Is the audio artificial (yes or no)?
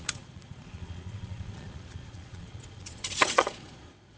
yes